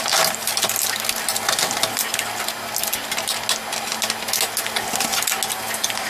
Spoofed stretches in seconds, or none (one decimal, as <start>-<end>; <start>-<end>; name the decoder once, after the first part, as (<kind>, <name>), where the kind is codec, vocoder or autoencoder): none